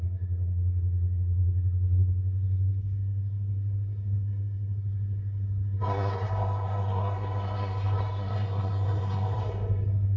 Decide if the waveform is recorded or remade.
remade